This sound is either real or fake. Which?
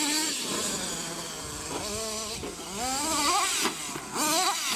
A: real